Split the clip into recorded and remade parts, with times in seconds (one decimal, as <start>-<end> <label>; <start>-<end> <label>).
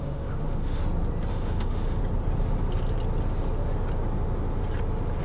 0.0-0.8 remade; 0.8-1.3 recorded; 1.3-2.0 remade; 2.0-5.2 recorded